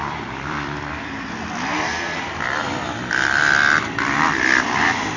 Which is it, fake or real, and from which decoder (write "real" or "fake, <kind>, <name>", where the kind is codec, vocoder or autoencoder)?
fake, vocoder, BigVGAN v2